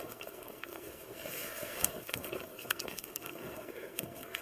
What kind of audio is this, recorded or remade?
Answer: remade